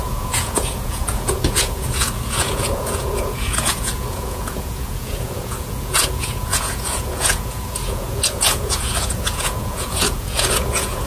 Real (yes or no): no